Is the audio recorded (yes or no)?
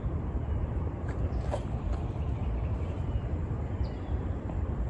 no